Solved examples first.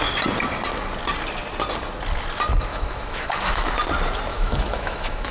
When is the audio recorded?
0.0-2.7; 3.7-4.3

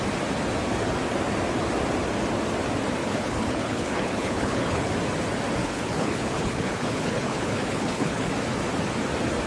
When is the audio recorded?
0.0-3.0; 4.9-5.6; 8.3-9.5